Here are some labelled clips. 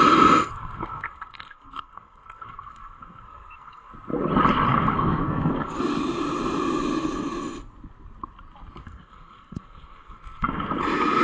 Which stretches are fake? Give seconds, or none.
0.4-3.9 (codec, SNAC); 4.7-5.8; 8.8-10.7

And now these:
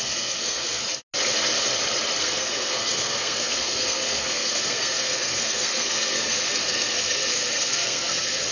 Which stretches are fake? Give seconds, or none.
0.0-0.8 (codec, SNAC); 2.2-8.5

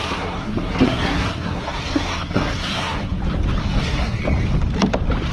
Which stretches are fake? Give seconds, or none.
0.0-3.2 (codec, SNAC); 3.6-4.2

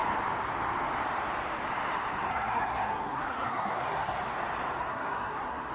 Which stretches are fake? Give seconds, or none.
2.3-4.2 (codec, SNAC); 4.9-5.7

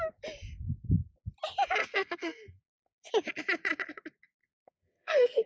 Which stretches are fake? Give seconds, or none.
1.8-3.1 (codec, SNAC); 4.4-5.5